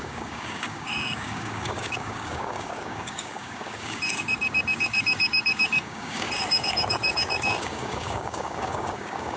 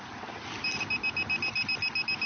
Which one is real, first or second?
second